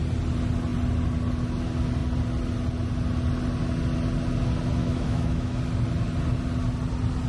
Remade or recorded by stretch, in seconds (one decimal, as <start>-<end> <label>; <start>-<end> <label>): 0.0-4.8 recorded; 4.8-5.6 remade; 5.6-7.3 recorded